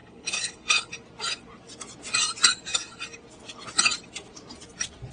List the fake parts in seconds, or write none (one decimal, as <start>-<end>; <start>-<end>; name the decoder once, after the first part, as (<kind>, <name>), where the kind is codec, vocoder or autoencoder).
0.0-0.9 (codec, HILCodec)